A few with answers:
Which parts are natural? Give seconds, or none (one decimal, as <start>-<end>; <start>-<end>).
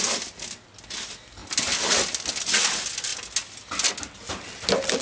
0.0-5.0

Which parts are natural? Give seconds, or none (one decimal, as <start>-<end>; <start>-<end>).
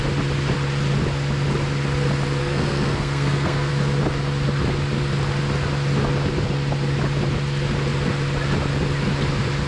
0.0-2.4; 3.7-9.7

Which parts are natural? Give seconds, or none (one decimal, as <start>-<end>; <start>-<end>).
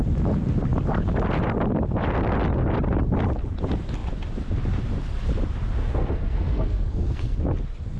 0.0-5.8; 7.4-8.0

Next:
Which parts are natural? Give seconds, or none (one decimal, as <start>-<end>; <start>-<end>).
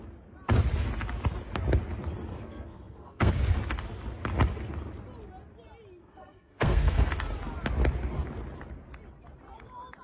0.0-2.3; 3.3-6.0; 7.1-10.0